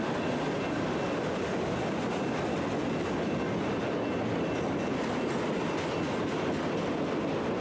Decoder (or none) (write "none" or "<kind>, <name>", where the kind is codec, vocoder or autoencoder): none